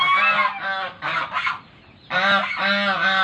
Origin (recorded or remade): recorded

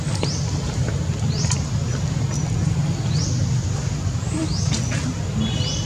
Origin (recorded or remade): recorded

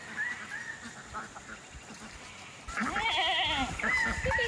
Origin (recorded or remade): recorded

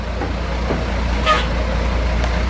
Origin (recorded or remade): recorded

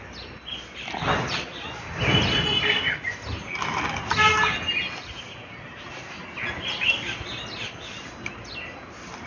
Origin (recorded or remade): recorded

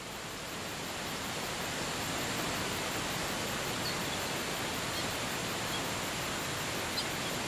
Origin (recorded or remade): recorded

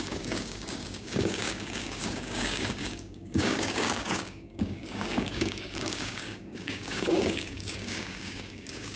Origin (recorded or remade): remade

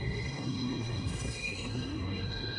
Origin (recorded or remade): remade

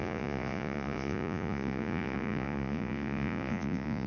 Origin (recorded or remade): remade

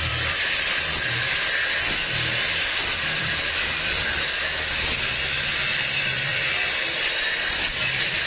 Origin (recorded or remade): remade